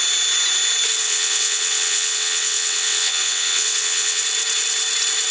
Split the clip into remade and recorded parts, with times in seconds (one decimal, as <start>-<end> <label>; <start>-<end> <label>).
0.0-1.0 recorded; 1.0-4.2 remade; 4.2-5.3 recorded